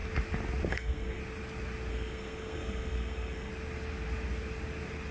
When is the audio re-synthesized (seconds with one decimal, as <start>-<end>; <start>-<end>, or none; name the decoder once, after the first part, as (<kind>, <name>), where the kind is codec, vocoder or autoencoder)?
0.7-1.2 (codec, SNAC); 1.9-3.5